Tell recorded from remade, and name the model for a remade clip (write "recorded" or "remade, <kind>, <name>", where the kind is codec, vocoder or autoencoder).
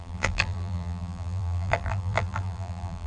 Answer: remade, vocoder, BigVGAN v2